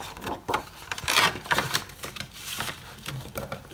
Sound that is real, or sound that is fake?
fake